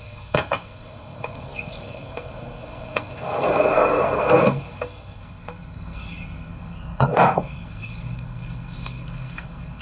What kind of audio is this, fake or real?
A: fake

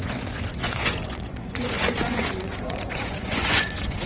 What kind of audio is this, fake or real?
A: fake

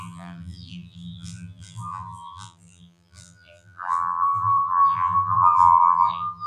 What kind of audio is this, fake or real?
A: fake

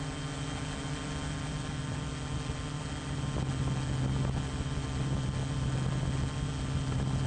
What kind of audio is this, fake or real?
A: real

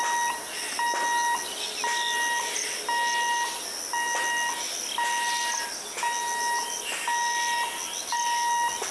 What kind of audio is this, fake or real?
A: real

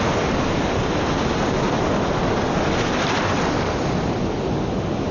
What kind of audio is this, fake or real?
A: fake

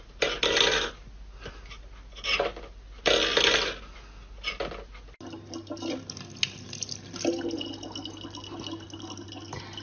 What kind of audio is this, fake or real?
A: real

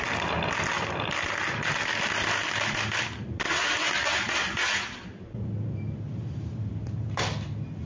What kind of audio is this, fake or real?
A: real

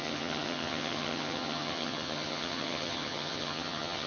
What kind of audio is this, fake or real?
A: fake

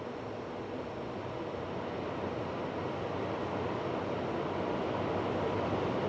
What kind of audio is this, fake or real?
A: real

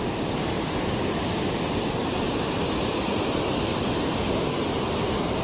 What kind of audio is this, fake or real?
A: fake